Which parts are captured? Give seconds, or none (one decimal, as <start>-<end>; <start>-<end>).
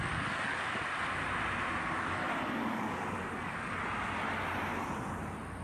0.8-1.8; 3.8-5.6